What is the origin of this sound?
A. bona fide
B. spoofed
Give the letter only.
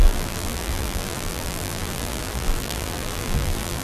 B